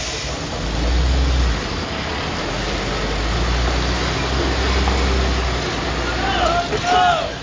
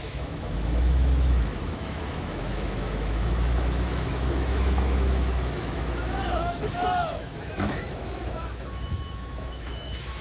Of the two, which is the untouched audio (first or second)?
first